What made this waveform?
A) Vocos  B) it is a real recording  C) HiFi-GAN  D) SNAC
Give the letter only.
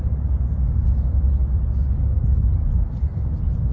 B